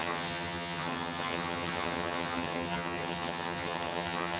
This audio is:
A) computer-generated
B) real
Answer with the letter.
A